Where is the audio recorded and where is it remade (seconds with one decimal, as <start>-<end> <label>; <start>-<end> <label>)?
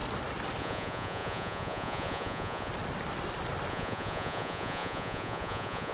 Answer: 0.0-0.6 recorded; 0.6-2.7 remade; 2.7-3.7 recorded; 3.7-5.9 remade